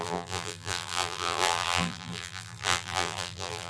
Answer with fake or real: fake